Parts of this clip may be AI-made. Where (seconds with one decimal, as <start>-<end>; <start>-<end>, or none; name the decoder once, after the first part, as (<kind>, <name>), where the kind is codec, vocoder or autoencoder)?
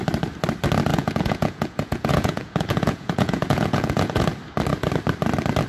0.9-4.3 (vocoder, Vocos)